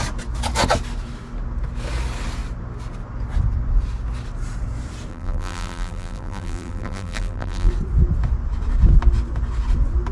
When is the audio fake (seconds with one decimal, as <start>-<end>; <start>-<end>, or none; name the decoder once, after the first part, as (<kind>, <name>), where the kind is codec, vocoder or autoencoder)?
5.1-7.7 (vocoder, BigVGAN v2)